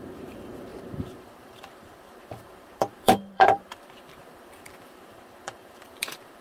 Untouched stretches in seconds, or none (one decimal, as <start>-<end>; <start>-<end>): none